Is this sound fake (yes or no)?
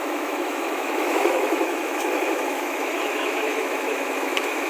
yes